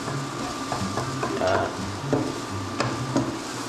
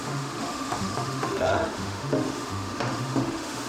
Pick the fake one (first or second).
second